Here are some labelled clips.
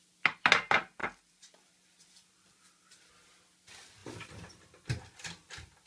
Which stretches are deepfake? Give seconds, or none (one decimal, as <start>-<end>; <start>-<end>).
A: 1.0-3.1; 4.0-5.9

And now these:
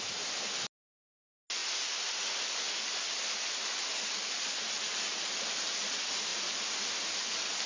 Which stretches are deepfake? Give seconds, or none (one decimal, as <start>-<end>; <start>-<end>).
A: none

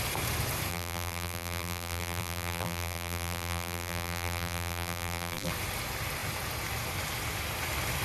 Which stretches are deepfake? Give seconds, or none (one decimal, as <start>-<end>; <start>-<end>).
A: 0.7-5.5

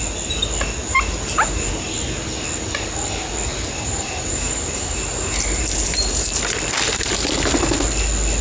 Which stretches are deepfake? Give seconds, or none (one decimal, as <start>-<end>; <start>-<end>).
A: 0.8-1.7; 3.5-6.3

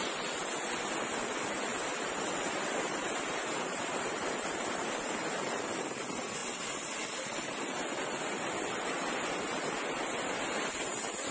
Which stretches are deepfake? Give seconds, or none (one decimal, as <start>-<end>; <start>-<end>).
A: 1.7-5.3